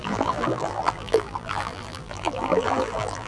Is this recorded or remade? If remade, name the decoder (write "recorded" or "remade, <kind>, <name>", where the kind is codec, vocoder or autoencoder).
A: remade, vocoder, BigVGAN v2